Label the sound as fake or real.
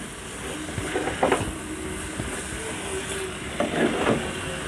real